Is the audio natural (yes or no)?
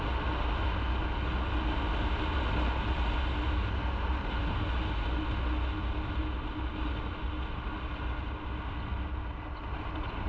yes